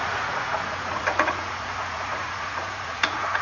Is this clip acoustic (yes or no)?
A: no